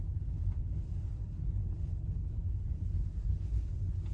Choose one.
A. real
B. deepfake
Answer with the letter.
B